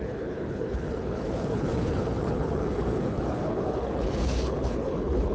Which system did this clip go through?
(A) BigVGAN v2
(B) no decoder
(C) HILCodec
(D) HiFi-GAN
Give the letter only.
C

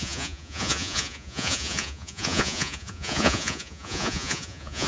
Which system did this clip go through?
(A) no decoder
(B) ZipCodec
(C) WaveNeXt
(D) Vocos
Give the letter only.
D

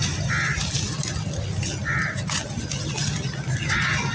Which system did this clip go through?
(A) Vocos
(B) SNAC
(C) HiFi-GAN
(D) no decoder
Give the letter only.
D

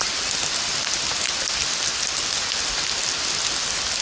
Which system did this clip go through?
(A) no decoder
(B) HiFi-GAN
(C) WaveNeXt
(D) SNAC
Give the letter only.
A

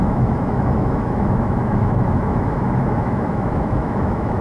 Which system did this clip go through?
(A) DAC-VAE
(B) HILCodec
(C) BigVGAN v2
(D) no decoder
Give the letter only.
A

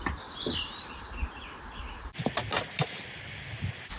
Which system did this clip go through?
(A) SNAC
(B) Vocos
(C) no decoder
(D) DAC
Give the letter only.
C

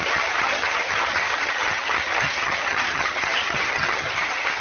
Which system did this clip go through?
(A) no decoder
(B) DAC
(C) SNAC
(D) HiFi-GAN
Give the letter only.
D